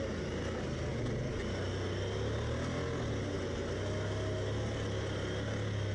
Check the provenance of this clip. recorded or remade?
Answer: recorded